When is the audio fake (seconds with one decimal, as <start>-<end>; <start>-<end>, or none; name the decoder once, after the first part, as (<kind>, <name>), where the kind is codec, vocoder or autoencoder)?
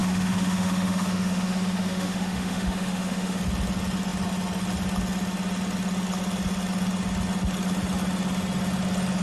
0.0-3.4 (autoencoder, DAC-VAE)